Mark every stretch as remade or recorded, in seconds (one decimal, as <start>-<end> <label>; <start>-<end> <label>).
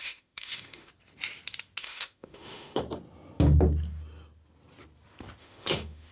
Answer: 0.0-0.9 remade; 0.9-1.8 recorded; 1.8-2.8 remade; 2.8-5.4 recorded; 5.4-6.1 remade